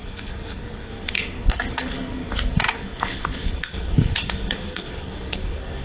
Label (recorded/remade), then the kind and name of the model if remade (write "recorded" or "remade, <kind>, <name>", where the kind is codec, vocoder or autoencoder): remade, codec, SNAC